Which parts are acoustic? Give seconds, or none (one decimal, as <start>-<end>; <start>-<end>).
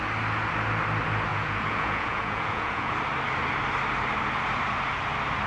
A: 0.0-1.3; 2.9-5.5